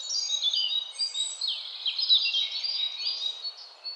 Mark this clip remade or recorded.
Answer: recorded